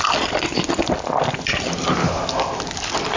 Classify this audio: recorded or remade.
recorded